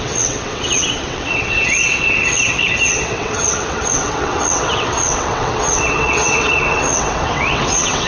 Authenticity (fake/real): fake